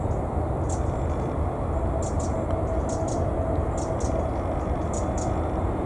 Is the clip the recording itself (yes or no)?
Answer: yes